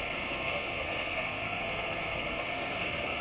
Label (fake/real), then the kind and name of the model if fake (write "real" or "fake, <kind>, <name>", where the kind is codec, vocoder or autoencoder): fake, codec, SNAC